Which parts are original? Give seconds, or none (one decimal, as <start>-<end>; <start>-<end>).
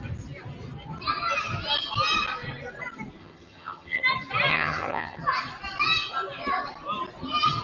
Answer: 0.0-3.2; 4.0-4.5; 5.2-7.6